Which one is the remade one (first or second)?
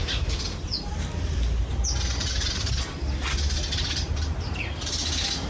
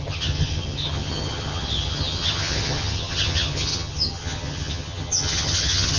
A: second